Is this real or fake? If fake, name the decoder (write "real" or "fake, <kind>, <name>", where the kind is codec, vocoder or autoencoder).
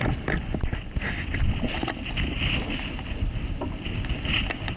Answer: real